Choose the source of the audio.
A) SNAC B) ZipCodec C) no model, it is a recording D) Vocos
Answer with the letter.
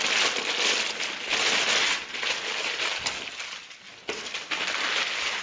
C